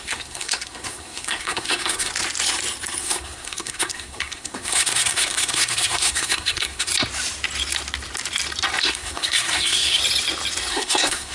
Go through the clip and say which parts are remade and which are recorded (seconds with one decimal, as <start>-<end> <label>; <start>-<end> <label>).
0.0-2.1 remade; 2.1-3.0 recorded; 3.0-6.9 remade; 6.9-8.8 recorded; 8.8-10.0 remade; 10.0-10.7 recorded; 10.7-11.3 remade

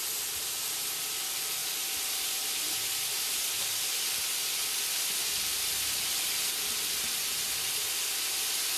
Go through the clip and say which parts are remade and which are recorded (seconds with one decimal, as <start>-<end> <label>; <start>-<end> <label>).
0.0-1.6 recorded; 1.6-3.6 remade; 3.6-8.8 recorded

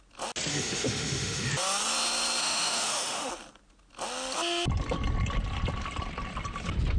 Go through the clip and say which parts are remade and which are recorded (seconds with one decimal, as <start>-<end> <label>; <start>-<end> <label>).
0.0-0.5 recorded; 0.5-1.5 remade; 1.5-2.4 recorded; 2.4-3.3 remade; 3.3-7.0 recorded

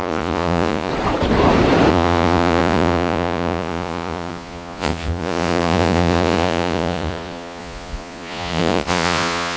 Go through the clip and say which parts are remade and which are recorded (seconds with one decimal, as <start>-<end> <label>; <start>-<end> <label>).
0.0-0.9 remade; 0.9-1.9 recorded; 1.9-9.6 remade